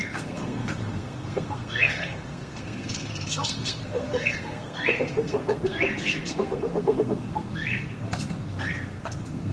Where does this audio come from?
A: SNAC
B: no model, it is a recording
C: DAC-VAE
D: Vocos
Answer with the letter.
A